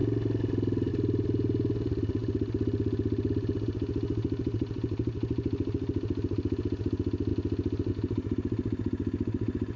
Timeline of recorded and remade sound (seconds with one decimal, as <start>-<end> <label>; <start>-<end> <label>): 0.0-9.8 recorded